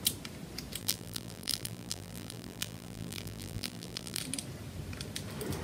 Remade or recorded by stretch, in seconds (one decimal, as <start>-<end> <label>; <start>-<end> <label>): 0.0-0.8 recorded; 0.8-4.2 remade; 4.2-5.6 recorded